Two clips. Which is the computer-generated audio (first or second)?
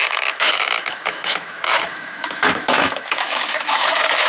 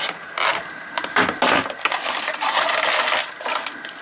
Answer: first